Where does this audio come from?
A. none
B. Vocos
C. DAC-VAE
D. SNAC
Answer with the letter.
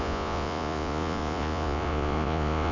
B